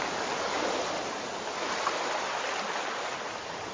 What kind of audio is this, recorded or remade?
recorded